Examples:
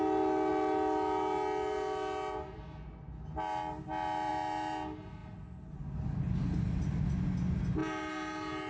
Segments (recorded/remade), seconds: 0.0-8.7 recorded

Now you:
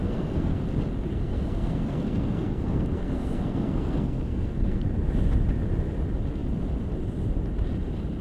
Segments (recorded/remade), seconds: 0.0-0.6 remade; 0.6-1.1 recorded; 1.1-4.8 remade; 4.8-8.2 recorded

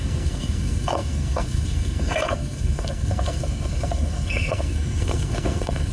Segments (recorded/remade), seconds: 0.0-5.9 remade

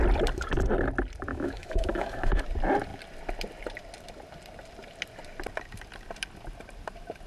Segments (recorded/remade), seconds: 0.0-1.3 recorded; 1.3-2.4 remade; 2.4-7.3 recorded

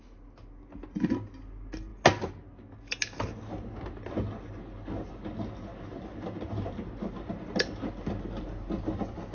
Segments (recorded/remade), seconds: 0.0-5.7 recorded; 5.7-6.7 remade; 6.7-9.3 recorded

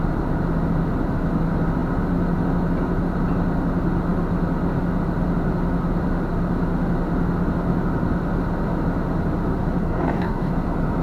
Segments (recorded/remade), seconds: 0.0-9.8 recorded; 9.8-10.5 remade; 10.5-11.0 recorded